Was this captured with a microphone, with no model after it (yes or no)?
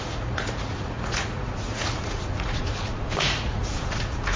no